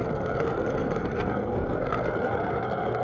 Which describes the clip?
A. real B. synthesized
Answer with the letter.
B